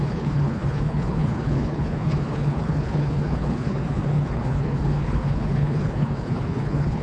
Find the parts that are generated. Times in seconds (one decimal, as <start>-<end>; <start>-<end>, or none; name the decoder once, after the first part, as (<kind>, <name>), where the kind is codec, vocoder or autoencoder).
0.0-7.0 (codec, HILCodec)